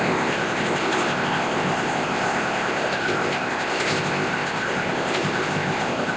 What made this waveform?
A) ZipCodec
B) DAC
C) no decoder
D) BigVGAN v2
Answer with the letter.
A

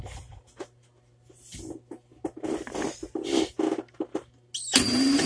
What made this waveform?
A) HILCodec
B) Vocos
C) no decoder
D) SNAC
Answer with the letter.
C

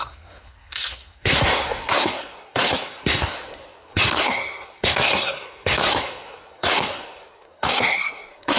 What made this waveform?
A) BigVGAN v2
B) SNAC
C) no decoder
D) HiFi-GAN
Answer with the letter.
B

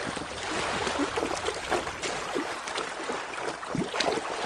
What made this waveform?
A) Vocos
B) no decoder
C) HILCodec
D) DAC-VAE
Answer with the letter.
B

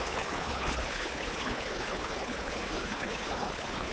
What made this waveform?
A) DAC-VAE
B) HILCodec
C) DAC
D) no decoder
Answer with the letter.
B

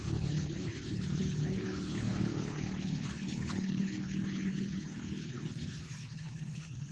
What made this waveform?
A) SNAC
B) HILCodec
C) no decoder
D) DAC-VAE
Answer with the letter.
B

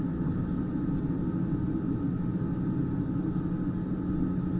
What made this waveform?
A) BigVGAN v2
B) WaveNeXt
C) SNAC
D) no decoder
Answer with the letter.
D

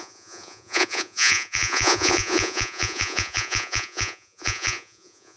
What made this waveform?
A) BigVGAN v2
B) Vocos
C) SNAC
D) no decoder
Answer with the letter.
B